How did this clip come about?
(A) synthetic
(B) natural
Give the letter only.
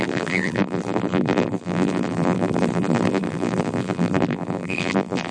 A